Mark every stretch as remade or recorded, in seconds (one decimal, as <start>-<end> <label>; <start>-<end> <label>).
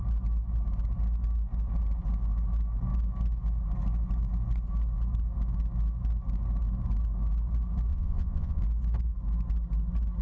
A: 0.0-7.9 recorded; 7.9-8.6 remade; 8.6-10.2 recorded